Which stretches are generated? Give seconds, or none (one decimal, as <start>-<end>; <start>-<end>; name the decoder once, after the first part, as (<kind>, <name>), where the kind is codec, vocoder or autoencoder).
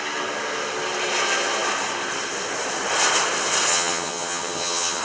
3.7-5.0 (vocoder, HiFi-GAN)